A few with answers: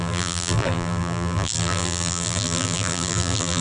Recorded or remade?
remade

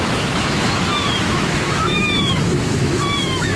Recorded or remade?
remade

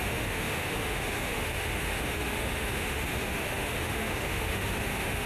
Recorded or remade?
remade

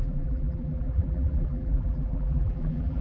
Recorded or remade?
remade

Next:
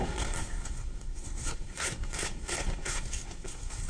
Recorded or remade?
remade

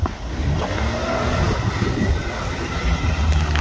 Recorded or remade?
recorded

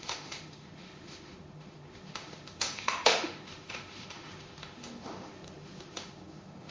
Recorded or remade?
remade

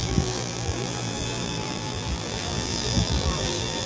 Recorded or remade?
remade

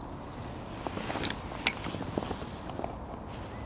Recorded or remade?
recorded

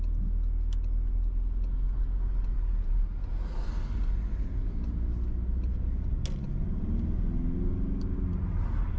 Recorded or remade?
recorded